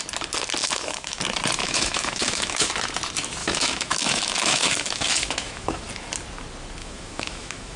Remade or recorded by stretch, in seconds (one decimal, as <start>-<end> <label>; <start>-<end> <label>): 0.0-0.6 recorded; 0.6-1.2 remade; 1.2-1.6 recorded; 1.6-2.7 remade; 2.7-3.4 recorded; 3.4-5.8 remade; 5.8-6.8 recorded; 6.8-7.8 remade